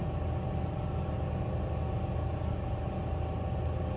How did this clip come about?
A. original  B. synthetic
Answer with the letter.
A